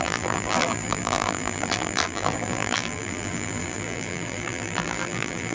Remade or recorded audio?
remade